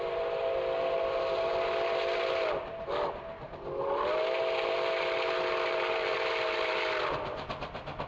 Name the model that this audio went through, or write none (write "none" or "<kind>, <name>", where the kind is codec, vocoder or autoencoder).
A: none